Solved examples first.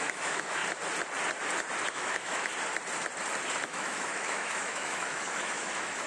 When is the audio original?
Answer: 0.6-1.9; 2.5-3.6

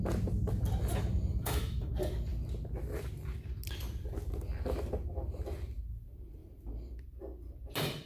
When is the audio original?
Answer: 0.0-1.3; 1.9-8.1

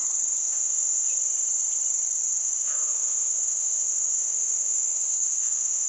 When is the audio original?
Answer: 0.0-0.4; 1.1-2.4

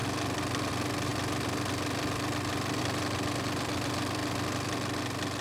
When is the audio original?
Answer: 0.0-5.4

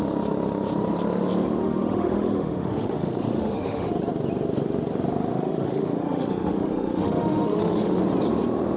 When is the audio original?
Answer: 0.0-1.6; 3.9-5.3; 8.0-8.8

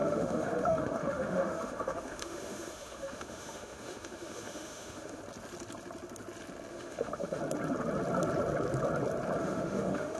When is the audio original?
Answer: 5.2-6.7; 7.4-9.4

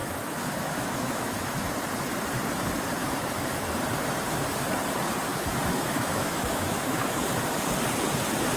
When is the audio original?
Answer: 1.7-3.0; 3.7-5.3; 7.2-8.6